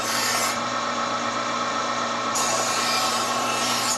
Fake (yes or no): yes